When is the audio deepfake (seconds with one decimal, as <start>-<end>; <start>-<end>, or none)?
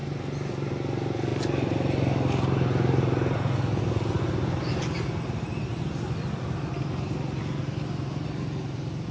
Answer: none